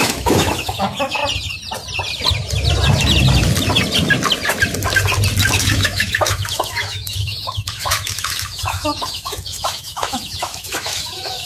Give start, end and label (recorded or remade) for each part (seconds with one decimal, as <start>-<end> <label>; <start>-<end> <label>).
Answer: 0.0-1.2 remade; 1.2-5.5 recorded; 5.5-11.5 remade